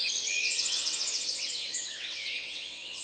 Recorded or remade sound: remade